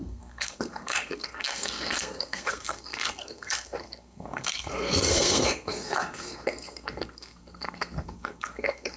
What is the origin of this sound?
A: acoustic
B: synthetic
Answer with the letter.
B